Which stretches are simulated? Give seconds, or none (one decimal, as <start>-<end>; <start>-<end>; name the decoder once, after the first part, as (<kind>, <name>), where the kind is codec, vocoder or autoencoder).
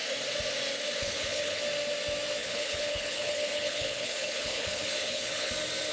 1.0-1.6 (codec, HILCodec); 2.4-5.5